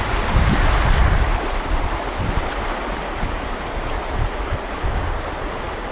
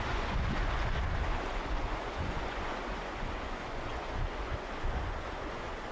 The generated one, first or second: second